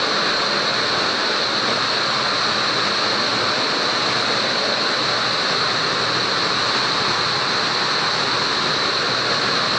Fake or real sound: real